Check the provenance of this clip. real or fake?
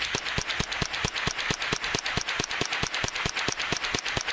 real